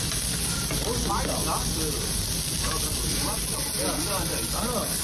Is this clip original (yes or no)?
yes